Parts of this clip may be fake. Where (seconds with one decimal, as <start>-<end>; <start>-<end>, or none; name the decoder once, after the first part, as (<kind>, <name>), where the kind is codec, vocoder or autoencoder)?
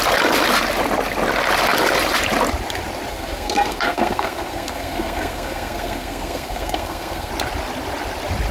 3.1-7.3 (codec, SNAC)